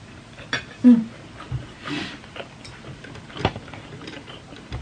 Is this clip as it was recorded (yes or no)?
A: yes